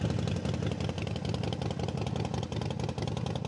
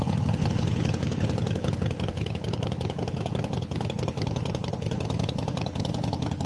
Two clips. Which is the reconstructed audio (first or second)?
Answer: second